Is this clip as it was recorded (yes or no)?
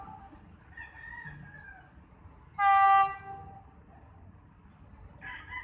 yes